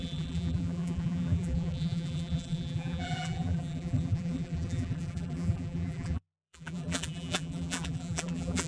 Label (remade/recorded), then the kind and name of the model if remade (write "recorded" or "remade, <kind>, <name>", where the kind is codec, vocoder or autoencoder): remade, vocoder, BigVGAN v2